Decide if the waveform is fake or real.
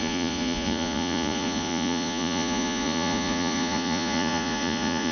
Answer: fake